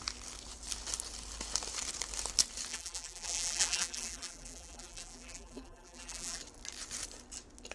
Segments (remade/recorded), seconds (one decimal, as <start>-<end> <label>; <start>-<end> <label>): 0.0-2.7 recorded; 2.7-6.4 remade; 6.4-7.7 recorded